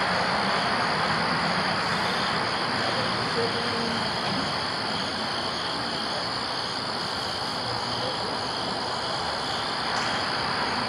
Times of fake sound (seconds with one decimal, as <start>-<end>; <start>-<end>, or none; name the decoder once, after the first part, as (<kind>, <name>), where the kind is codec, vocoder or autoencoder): none